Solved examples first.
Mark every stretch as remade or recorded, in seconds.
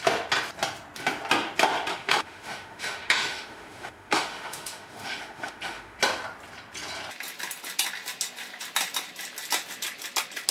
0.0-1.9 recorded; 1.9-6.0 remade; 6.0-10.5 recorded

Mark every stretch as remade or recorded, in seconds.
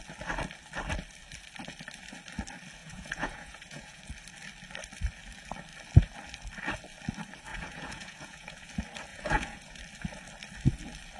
0.0-2.8 recorded; 2.8-4.0 remade; 4.0-7.5 recorded; 7.5-8.7 remade; 8.7-9.1 recorded; 9.1-9.8 remade; 9.8-11.2 recorded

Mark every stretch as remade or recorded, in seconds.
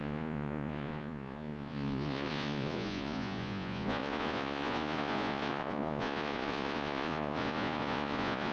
0.0-8.5 remade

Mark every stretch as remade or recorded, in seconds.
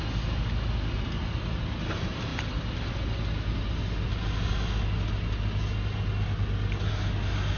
0.0-7.6 recorded